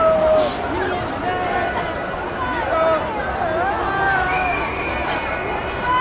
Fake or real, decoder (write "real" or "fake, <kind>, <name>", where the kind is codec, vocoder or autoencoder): real